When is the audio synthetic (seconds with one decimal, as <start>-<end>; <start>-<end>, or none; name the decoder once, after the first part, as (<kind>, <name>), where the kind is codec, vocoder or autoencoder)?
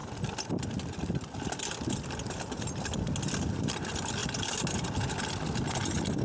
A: none